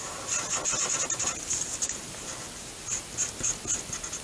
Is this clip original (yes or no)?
yes